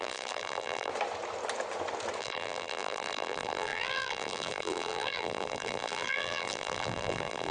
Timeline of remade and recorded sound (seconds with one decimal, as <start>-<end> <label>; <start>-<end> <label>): 0.0-0.9 remade; 0.9-2.2 recorded; 2.2-7.5 remade